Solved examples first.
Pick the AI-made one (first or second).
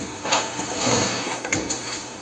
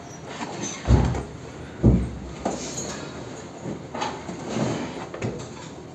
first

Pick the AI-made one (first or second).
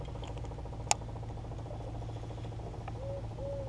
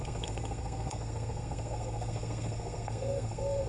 second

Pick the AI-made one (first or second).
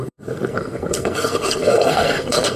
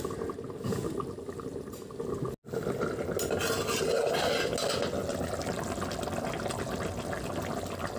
first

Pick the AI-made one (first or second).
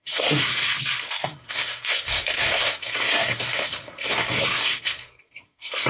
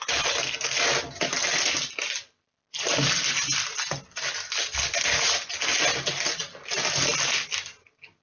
first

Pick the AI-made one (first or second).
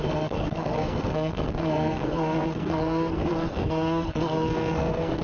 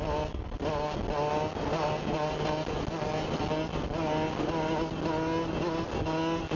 first